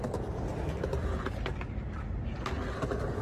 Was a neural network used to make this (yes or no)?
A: no